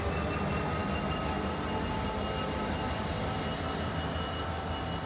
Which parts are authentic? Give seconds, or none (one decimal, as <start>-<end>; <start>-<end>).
0.0-5.1